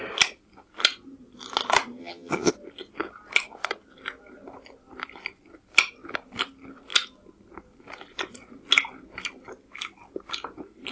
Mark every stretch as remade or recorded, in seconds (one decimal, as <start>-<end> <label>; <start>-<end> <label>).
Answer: 0.0-2.0 recorded; 2.0-2.5 remade; 2.5-10.9 recorded